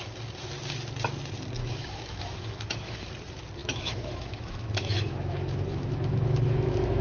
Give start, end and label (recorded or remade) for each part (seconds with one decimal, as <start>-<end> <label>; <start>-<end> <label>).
0.0-1.6 recorded; 1.6-3.1 remade; 3.1-3.6 recorded; 3.6-7.0 remade

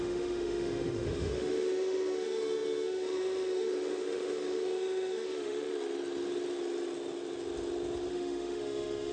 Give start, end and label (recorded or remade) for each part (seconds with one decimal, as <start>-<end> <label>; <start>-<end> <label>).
0.0-5.7 remade; 5.7-8.1 recorded; 8.1-9.1 remade

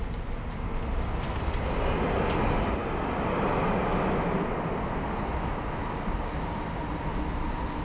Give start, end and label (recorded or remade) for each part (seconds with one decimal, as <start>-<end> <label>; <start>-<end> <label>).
0.0-7.8 recorded

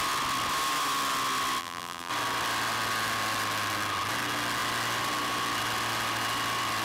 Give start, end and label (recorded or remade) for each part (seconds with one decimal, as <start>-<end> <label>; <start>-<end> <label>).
0.0-1.6 recorded; 1.6-2.1 remade; 2.1-6.8 recorded

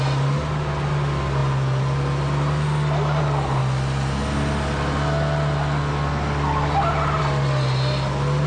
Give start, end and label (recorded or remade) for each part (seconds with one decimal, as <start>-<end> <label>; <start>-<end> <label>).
0.0-8.5 recorded